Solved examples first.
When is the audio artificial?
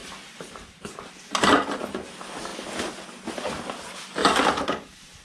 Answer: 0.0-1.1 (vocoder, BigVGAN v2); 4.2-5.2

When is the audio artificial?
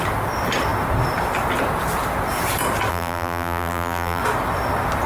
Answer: 2.9-4.2 (vocoder, BigVGAN v2)